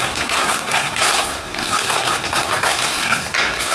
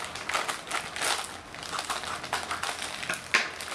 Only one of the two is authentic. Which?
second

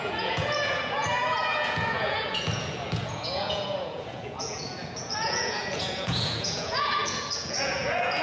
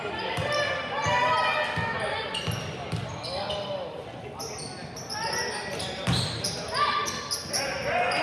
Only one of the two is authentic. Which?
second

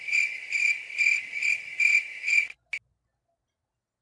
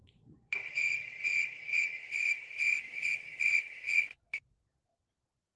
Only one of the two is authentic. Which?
first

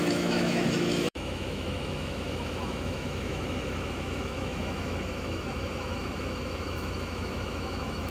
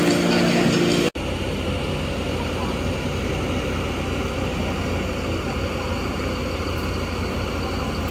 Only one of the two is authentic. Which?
second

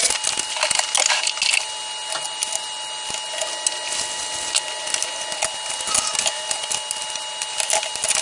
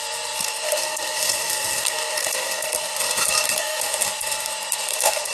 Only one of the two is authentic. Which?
first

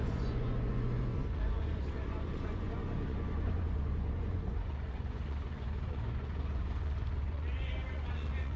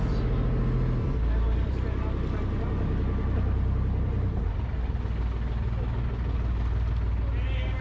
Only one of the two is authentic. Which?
second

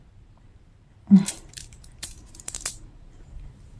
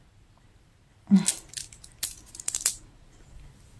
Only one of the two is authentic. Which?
second